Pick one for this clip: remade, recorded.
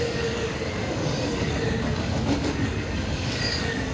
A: remade